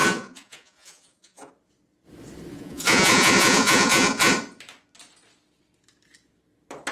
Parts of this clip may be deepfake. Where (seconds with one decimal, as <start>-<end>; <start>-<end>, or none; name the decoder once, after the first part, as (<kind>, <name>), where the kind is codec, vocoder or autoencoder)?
0.0-1.5 (vocoder, Vocos); 2.5-4.3